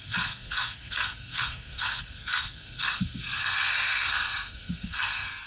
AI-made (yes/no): yes